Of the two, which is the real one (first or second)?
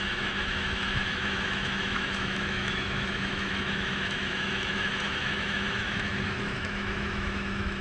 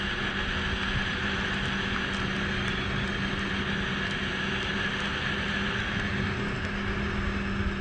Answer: second